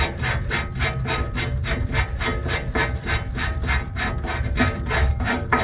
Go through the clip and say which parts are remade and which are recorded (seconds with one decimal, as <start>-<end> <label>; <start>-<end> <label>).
0.0-5.0 recorded; 5.0-5.6 remade